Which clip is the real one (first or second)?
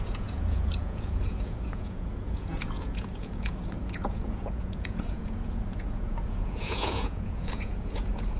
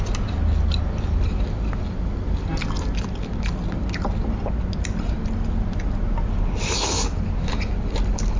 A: second